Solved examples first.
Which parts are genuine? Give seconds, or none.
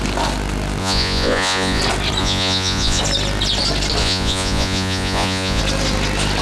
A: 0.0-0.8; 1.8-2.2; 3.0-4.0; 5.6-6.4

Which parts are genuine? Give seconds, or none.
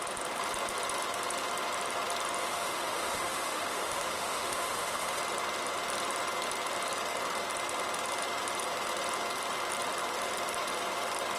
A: 0.0-2.4; 5.2-11.4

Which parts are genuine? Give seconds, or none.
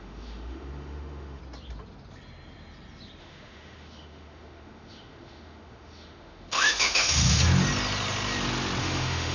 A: 1.4-3.2; 7.4-8.8